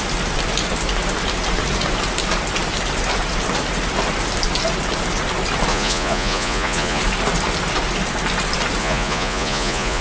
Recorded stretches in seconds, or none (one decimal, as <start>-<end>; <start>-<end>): 0.0-5.7; 7.0-8.8